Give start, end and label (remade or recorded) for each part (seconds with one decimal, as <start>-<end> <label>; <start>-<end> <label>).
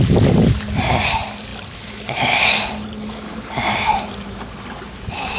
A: 0.0-1.5 recorded; 1.5-3.1 remade; 3.1-5.4 recorded